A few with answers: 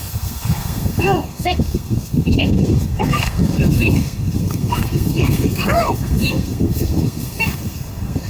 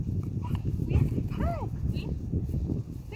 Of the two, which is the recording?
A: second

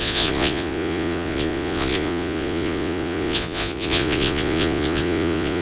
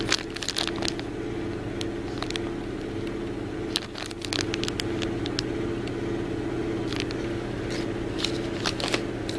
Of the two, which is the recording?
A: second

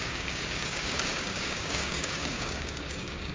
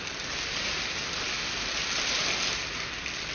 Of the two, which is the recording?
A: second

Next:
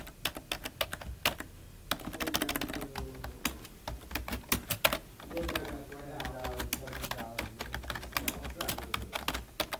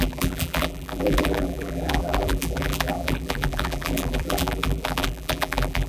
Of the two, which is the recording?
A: first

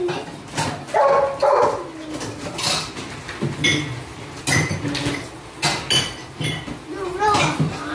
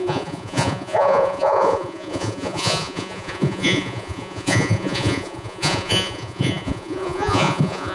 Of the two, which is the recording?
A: first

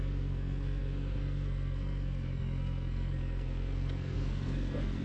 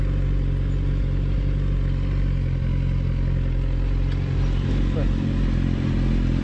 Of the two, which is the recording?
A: second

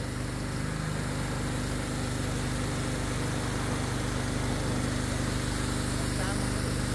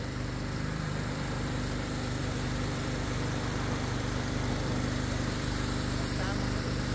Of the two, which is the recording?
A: first